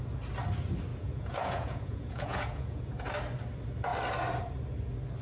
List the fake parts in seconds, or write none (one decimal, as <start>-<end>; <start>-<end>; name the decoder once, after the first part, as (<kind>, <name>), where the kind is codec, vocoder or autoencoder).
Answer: 0.9-3.1 (vocoder, Vocos)